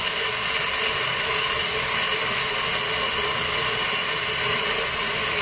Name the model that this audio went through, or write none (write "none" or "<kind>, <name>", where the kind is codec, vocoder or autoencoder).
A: none